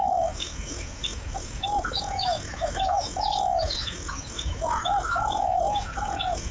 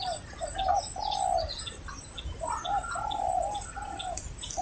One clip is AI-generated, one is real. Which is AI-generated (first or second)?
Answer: first